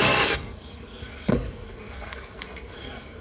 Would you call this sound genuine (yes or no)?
no